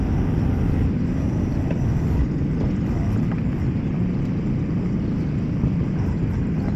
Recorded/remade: recorded